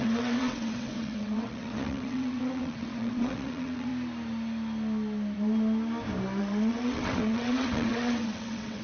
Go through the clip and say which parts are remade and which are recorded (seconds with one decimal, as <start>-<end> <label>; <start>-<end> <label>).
0.0-3.9 remade; 3.9-6.4 recorded; 6.4-8.8 remade